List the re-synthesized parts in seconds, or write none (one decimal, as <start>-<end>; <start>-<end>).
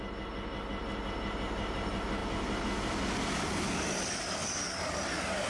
none